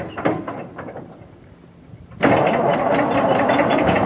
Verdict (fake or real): real